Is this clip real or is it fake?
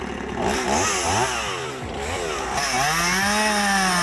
real